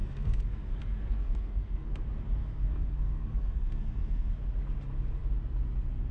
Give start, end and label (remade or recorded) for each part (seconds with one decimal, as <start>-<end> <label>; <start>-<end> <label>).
0.0-2.0 remade; 2.0-2.4 recorded; 2.4-4.3 remade; 4.3-6.1 recorded